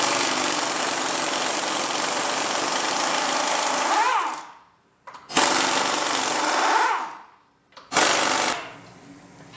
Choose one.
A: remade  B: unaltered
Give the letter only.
B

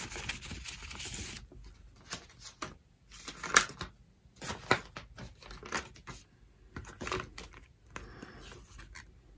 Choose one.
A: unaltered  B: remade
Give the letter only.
A